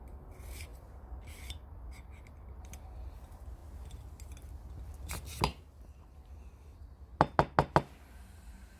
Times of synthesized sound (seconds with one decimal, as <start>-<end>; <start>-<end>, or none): none